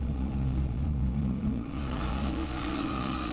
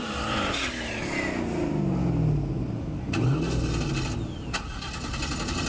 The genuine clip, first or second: second